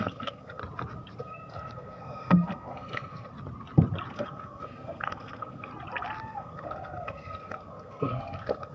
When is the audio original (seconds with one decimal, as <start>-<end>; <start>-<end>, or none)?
0.6-1.2; 3.3-4.1; 5.7-6.2